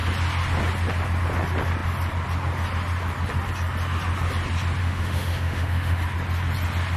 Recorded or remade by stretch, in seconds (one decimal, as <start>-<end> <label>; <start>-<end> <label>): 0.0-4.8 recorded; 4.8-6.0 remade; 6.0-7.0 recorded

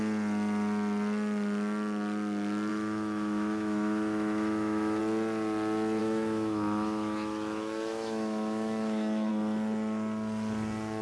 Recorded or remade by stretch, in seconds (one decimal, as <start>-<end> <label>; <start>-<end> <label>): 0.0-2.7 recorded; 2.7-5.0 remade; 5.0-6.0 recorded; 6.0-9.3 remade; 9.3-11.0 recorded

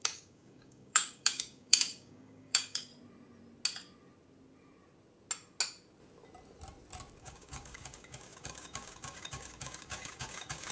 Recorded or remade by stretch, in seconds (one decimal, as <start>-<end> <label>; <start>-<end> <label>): 0.0-2.9 remade; 2.9-7.2 recorded; 7.2-10.7 remade

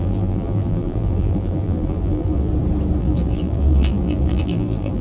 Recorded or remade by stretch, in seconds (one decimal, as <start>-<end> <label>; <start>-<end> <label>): 0.0-2.5 remade; 2.5-3.0 recorded; 3.0-5.0 remade

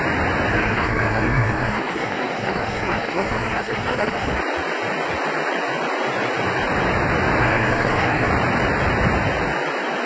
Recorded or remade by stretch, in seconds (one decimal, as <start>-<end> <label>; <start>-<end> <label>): 0.0-0.5 recorded; 0.5-4.4 remade; 4.4-7.4 recorded; 7.4-8.3 remade; 8.3-10.1 recorded

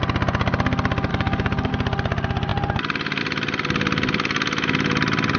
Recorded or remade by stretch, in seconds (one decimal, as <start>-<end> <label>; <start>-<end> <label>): 0.0-1.1 recorded; 1.1-1.7 remade; 1.7-5.4 recorded

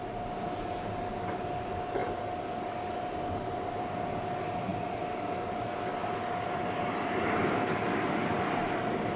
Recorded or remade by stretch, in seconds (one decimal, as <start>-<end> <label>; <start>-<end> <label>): 0.0-9.2 recorded